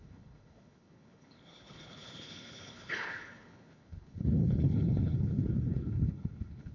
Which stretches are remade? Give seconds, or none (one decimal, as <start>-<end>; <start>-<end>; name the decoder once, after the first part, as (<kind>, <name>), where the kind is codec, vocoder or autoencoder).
0.0-6.7 (codec, HILCodec)